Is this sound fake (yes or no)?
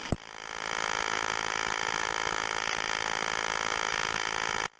no